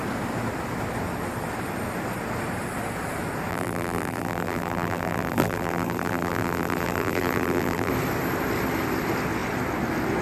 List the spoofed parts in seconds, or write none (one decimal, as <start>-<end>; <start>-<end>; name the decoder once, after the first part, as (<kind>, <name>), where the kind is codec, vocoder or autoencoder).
3.5-7.9 (vocoder, BigVGAN v2)